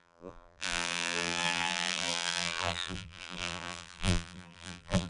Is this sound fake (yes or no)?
yes